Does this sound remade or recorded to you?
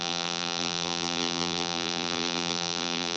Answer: remade